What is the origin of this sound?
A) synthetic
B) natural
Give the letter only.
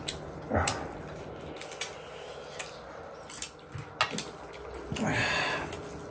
B